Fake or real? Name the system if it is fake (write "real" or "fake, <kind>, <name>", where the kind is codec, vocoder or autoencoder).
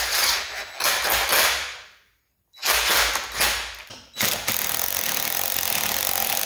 real